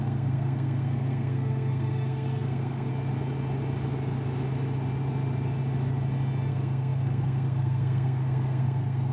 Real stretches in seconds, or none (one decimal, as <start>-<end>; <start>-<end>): 2.9-6.5

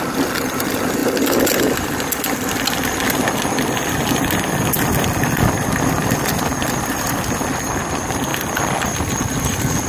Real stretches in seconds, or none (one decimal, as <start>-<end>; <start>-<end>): 0.0-9.9

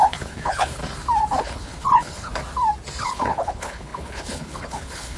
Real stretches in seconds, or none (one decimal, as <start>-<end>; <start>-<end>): 0.8-1.4; 2.4-3.0

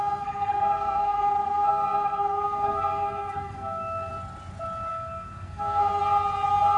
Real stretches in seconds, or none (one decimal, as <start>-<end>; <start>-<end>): 4.1-4.9; 6.0-6.8